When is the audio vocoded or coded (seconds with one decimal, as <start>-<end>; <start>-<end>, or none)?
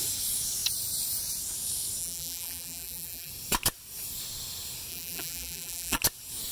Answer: 2.0-3.3; 4.9-6.0